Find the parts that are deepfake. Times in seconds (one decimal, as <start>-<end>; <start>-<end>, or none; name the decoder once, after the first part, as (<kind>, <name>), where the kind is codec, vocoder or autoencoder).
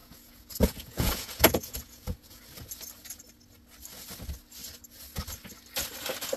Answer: 0.0-2.4 (vocoder, Vocos)